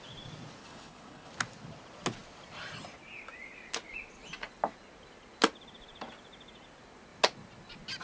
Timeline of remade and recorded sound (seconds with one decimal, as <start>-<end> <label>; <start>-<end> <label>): 0.0-0.6 recorded; 0.6-1.3 remade; 1.3-8.0 recorded